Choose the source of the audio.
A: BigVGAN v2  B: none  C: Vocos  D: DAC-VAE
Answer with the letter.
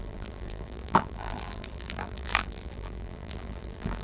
A